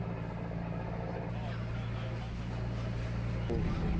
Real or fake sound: real